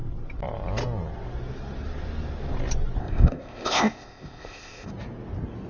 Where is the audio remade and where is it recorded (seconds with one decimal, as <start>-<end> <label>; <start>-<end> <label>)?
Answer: 0.0-3.0 recorded; 3.0-4.9 remade; 4.9-5.7 recorded